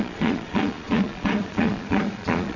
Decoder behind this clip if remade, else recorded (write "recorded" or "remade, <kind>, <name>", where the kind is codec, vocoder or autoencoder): remade, vocoder, Vocos